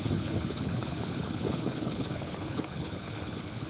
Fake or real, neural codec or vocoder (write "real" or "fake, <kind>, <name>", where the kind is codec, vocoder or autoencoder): fake, codec, HILCodec